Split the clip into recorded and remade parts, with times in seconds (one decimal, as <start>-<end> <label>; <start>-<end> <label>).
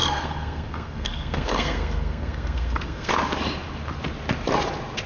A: 0.0-3.1 remade; 3.1-5.1 recorded